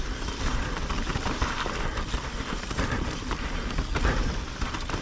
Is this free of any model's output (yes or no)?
no